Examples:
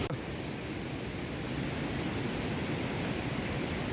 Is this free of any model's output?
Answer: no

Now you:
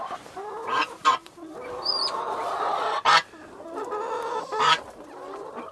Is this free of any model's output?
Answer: no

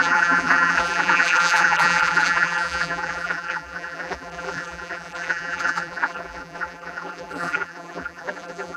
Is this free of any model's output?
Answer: no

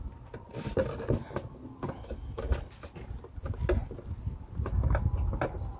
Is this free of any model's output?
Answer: yes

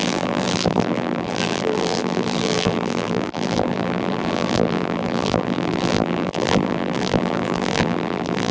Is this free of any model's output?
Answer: no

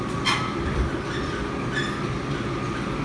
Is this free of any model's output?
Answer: yes